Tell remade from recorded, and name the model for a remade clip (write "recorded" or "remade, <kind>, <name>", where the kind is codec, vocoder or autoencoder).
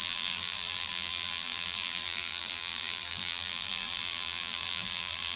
remade, vocoder, BigVGAN v2